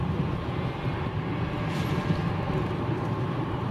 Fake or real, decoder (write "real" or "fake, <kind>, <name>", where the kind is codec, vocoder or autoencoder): real